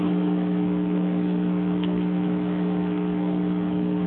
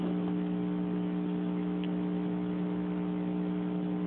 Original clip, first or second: second